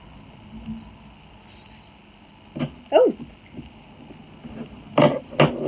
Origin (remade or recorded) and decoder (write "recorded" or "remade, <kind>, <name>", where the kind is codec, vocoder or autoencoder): recorded